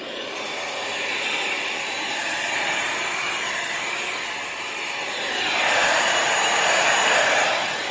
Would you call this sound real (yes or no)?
no